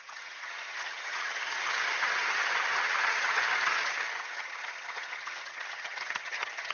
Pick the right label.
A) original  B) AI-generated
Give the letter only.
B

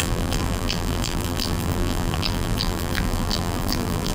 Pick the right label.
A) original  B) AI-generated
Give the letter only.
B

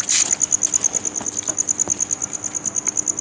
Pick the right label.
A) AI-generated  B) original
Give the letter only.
B